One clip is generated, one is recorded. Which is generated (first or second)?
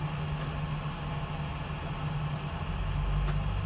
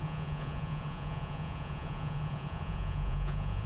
second